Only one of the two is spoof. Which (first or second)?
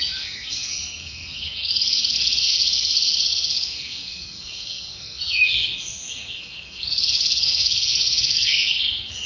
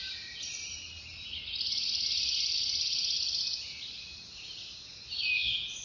first